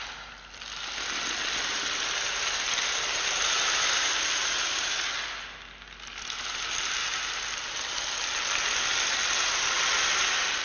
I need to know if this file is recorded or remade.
recorded